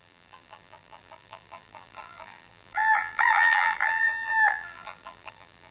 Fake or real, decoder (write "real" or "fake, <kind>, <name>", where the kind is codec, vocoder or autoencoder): fake, vocoder, BigVGAN v2